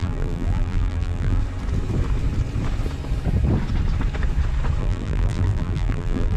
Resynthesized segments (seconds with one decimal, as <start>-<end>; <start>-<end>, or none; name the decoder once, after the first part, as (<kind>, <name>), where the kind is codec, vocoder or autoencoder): 0.0-1.4 (vocoder, BigVGAN v2); 4.8-6.4